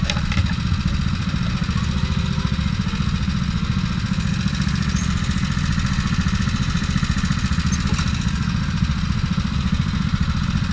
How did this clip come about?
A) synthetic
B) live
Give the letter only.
B